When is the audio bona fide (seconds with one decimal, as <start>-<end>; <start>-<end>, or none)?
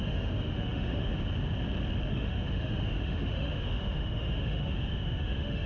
1.1-2.1